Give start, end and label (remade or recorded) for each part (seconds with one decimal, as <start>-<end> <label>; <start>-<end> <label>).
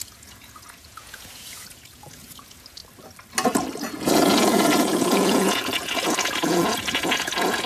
0.0-2.8 remade; 2.8-3.8 recorded; 3.8-7.7 remade